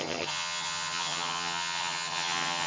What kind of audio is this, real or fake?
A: fake